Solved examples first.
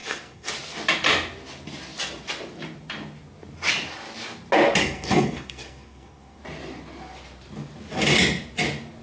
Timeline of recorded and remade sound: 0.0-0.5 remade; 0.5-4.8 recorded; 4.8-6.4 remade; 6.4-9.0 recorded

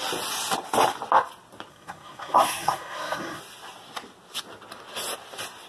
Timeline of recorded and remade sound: 0.0-1.7 recorded; 1.7-3.4 remade; 3.4-5.7 recorded

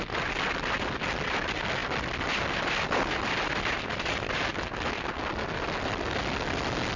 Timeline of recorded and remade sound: 0.0-3.5 recorded; 3.5-4.5 remade; 4.5-7.0 recorded

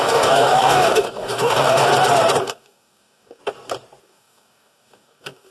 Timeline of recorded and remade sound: 0.0-1.9 remade; 1.9-2.4 recorded; 2.4-3.4 remade; 3.4-4.0 recorded; 4.0-5.5 remade

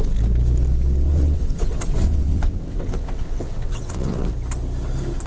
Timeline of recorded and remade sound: 0.0-1.1 recorded; 1.1-4.3 remade; 4.3-5.3 recorded